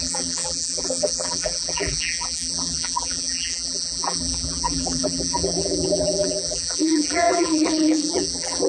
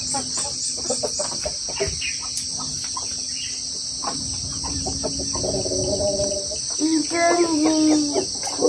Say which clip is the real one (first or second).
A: second